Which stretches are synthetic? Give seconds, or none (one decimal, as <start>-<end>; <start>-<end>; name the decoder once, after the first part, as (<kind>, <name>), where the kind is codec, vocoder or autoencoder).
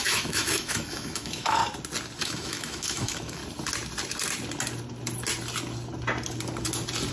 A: 0.0-1.6 (autoencoder, DAC-VAE); 2.2-3.4